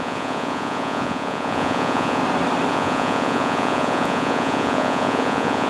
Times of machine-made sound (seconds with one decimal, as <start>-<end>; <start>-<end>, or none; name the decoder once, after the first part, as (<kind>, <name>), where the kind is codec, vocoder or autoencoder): 0.0-2.2 (vocoder, Vocos); 2.7-5.7